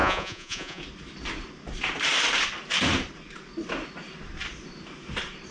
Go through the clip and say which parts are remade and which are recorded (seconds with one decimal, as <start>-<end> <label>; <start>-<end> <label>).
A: 0.0-0.8 remade; 0.8-5.5 recorded